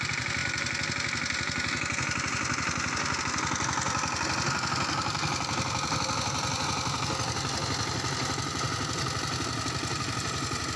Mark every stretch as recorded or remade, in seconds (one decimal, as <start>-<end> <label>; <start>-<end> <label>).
0.0-10.8 recorded